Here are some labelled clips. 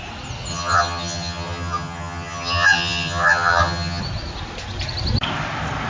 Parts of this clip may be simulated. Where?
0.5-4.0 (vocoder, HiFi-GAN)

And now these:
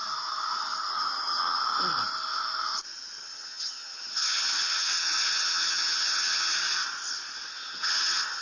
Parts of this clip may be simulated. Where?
0.9-1.6 (vocoder, HiFi-GAN); 3.2-6.5; 7.5-8.4

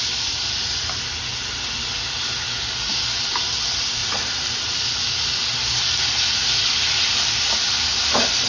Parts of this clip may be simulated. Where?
none